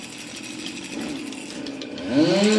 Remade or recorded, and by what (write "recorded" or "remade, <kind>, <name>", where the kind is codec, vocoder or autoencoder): recorded